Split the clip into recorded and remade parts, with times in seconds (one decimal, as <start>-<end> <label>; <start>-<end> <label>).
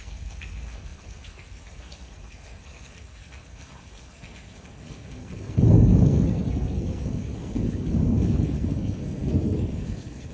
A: 0.0-10.3 remade